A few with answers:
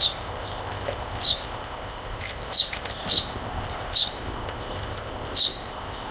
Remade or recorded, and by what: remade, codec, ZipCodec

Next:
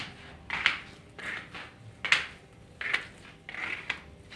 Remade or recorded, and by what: recorded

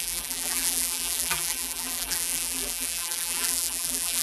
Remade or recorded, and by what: remade, vocoder, BigVGAN v2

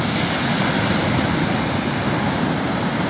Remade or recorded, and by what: recorded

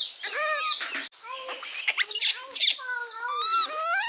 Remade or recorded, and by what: recorded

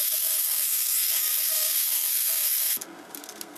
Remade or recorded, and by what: remade, codec, SNAC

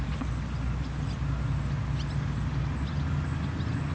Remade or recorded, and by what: recorded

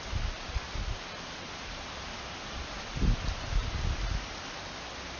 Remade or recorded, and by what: recorded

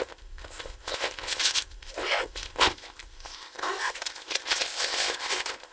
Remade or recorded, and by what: remade, codec, ZipCodec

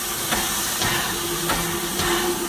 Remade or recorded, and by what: recorded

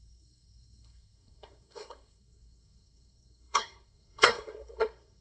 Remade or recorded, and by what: remade, codec, SNAC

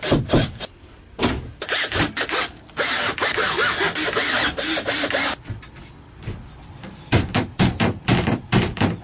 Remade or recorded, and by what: recorded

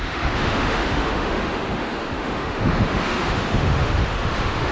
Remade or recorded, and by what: remade, autoencoder, DAC-VAE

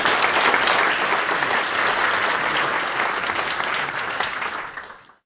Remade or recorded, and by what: recorded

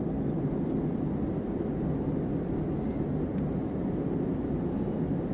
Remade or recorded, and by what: recorded